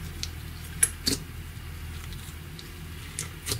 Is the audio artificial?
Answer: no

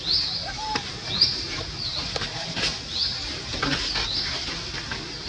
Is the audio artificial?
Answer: no